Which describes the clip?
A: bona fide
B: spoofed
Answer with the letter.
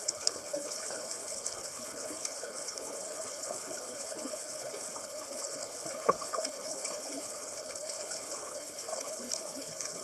B